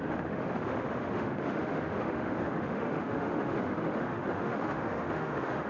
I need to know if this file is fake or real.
fake